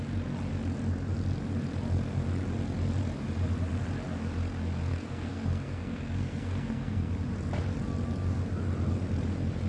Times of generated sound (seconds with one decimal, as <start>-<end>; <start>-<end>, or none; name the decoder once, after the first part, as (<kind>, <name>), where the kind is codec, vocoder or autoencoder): 4.9-7.1 (codec, SNAC)